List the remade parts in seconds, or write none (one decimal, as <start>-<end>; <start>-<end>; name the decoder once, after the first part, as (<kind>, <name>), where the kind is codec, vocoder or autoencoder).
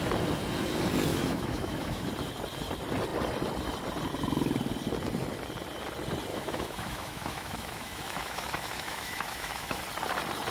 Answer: 1.1-2.1 (autoencoder, DAC-VAE); 6.3-9.8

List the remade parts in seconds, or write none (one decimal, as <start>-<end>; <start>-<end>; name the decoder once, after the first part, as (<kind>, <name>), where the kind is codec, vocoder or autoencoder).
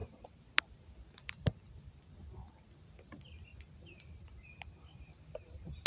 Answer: none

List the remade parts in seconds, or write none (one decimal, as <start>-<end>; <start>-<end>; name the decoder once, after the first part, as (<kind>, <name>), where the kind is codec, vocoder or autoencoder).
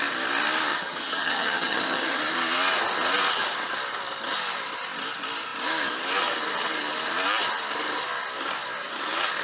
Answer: 0.7-2.2 (vocoder, HiFi-GAN)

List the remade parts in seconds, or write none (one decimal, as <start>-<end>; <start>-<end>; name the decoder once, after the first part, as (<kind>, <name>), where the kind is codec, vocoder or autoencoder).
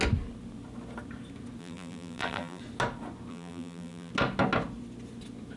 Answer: 1.6-2.6 (vocoder, BigVGAN v2); 3.3-4.1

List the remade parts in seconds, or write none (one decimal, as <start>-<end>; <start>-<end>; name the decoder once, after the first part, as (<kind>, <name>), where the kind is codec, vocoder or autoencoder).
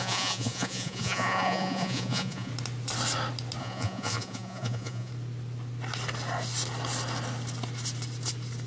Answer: 0.0-2.5 (vocoder, Vocos); 3.6-5.1